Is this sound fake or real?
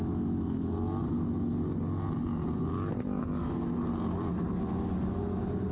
real